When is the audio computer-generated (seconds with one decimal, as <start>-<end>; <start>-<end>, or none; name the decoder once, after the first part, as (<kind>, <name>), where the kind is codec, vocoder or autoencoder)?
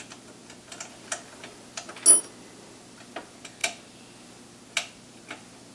none